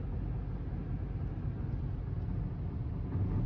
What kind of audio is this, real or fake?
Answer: real